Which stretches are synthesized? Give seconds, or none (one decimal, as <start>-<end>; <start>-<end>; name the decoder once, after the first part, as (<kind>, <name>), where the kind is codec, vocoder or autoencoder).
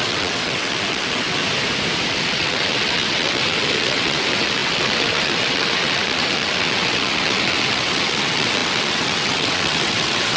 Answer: 0.0-1.4 (vocoder, WaveNeXt); 2.1-10.4